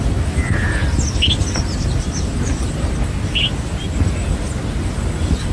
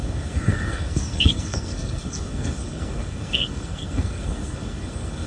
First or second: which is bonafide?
first